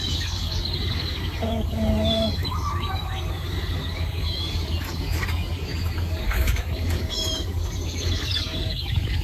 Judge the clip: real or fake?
fake